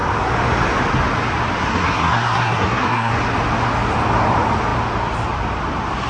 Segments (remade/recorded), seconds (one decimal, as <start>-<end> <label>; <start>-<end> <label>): 0.0-1.7 recorded; 1.7-3.1 remade; 3.1-6.1 recorded